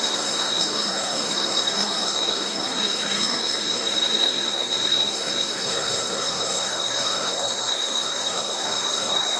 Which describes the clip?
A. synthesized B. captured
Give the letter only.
A